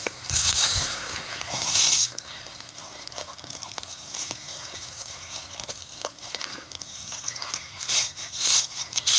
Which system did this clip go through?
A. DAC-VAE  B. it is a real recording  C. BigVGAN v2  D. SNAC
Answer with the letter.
D